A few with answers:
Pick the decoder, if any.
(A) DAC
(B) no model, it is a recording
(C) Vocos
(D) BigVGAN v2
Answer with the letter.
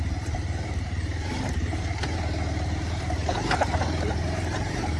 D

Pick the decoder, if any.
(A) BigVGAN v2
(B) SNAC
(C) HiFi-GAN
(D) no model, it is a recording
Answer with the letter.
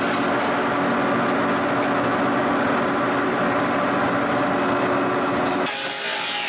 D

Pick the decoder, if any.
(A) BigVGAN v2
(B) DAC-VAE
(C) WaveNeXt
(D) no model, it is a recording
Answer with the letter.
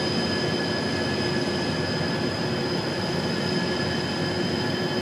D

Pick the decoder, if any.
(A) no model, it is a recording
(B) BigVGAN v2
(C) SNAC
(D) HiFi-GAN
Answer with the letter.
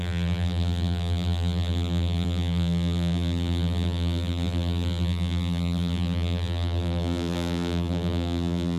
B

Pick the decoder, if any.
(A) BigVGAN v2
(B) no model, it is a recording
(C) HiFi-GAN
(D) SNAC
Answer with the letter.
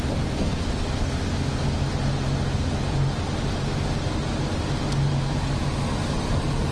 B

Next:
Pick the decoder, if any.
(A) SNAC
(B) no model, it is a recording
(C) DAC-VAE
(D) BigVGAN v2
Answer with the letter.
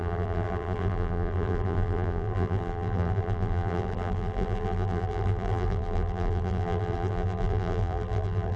D